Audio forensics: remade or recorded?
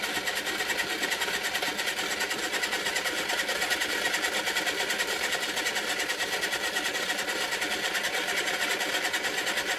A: recorded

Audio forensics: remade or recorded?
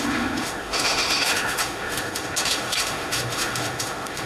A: remade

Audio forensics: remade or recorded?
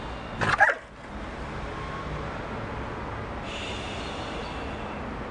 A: recorded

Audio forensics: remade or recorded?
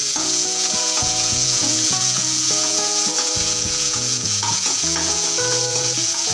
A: remade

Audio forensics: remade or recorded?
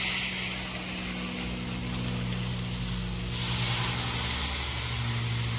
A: recorded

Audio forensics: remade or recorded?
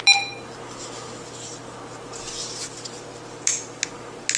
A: recorded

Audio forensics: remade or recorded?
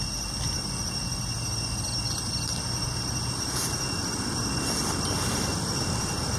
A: recorded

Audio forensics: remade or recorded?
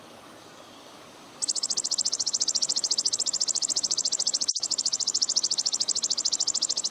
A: remade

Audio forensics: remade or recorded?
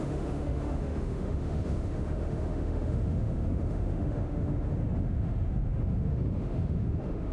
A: remade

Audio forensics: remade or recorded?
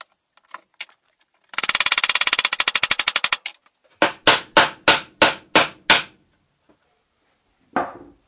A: recorded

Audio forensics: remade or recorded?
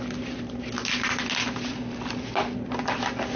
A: recorded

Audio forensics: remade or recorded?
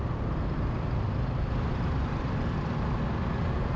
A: recorded